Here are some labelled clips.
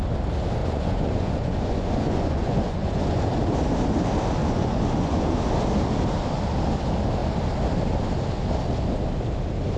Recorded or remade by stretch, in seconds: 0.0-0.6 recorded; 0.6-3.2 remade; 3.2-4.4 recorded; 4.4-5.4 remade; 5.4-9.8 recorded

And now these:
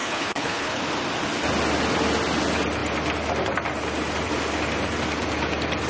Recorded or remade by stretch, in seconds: 0.0-0.8 remade; 0.8-5.9 recorded

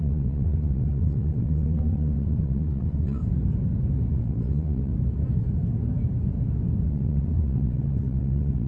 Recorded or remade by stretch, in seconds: 0.0-3.2 remade; 3.2-4.1 recorded; 4.1-4.9 remade; 4.9-6.9 recorded; 6.9-8.7 remade

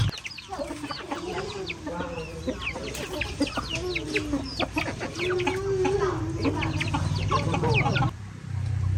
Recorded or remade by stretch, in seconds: 0.0-2.8 remade; 2.8-7.0 recorded; 7.0-9.0 remade

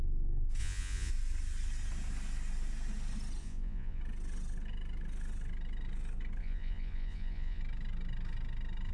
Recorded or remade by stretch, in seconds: 0.0-0.6 recorded; 0.6-1.1 remade; 1.1-3.4 recorded; 3.4-4.0 remade; 4.0-6.4 recorded; 6.4-7.6 remade; 7.6-8.9 recorded

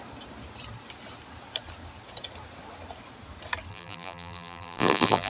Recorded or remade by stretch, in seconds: 0.0-3.7 recorded; 3.7-5.3 remade